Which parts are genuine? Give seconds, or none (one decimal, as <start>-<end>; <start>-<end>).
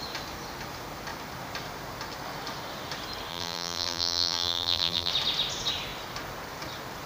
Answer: 0.0-3.3; 5.1-7.1